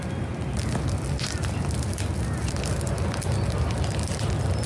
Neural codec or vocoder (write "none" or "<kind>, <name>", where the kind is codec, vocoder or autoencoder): none